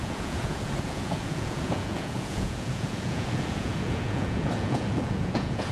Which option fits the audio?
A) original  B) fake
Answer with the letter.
B